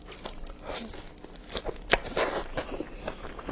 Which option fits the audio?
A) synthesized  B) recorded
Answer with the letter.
B